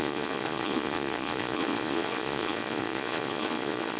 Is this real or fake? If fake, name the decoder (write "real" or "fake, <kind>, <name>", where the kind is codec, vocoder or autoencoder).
fake, vocoder, Vocos